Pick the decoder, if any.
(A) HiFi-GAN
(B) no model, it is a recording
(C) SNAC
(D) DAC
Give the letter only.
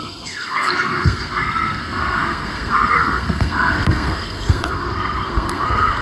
C